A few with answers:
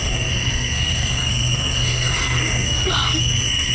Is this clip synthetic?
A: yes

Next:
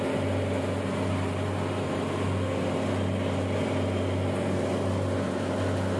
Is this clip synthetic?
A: no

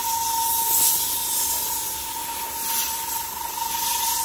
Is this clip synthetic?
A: no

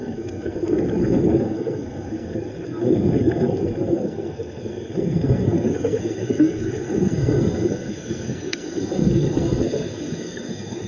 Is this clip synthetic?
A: yes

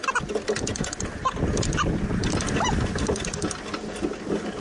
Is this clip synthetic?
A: no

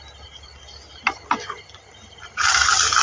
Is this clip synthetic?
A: no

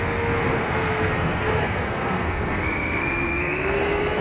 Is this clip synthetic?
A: yes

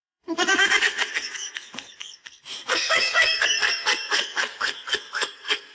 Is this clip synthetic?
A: yes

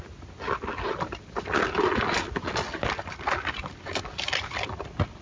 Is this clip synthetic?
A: no